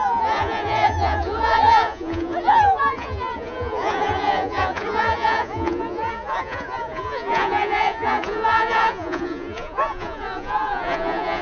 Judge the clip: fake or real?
fake